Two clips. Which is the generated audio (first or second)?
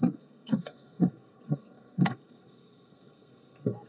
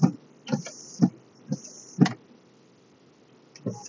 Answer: first